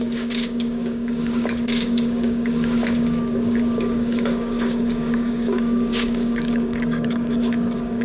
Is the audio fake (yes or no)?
yes